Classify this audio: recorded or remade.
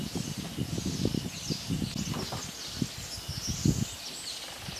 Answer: recorded